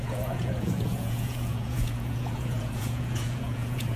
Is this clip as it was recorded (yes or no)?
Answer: no